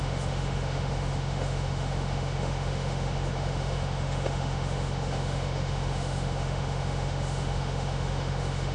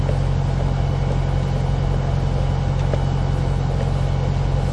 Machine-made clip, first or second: first